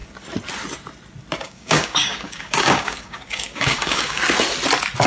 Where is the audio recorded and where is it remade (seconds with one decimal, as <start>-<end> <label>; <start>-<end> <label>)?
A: 0.0-1.4 recorded; 1.4-4.2 remade; 4.2-5.1 recorded